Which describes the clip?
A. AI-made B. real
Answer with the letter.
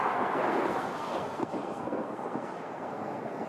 A